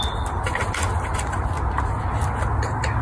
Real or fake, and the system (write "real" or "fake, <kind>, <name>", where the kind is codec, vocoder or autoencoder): real